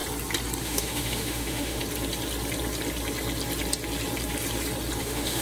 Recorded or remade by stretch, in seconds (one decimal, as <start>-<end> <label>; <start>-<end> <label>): 0.0-0.6 recorded; 0.6-1.8 remade; 1.8-5.0 recorded; 5.0-5.4 remade